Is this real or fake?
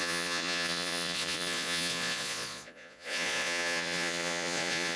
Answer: fake